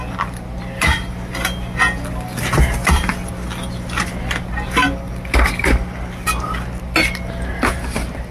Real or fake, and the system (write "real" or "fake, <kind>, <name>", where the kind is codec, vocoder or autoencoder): real